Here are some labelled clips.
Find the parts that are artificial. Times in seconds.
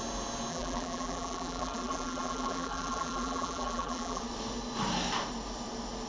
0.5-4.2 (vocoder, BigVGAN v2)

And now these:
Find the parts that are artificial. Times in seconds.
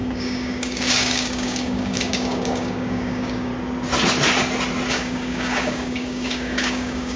0.0-3.5 (codec, DAC); 4.9-7.2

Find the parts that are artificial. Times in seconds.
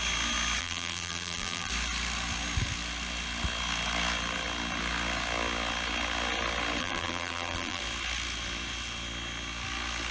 0.6-1.7 (vocoder, BigVGAN v2); 6.8-7.8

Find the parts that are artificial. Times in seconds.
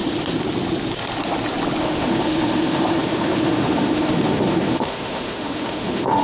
1.8-6.2 (autoencoder, DAC-VAE)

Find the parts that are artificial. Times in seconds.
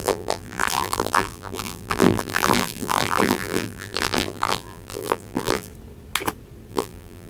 0.0-5.7 (vocoder, BigVGAN v2); 6.7-7.3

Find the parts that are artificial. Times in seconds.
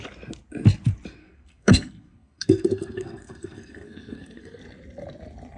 1.2-4.6 (codec, SNAC)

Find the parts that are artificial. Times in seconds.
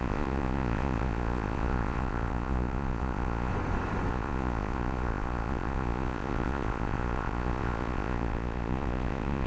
0.0-3.5 (vocoder, Vocos); 4.1-9.5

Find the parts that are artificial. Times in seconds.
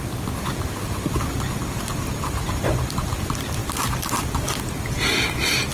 none